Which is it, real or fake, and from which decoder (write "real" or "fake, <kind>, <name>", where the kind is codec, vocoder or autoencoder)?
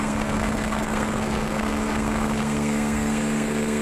fake, codec, SNAC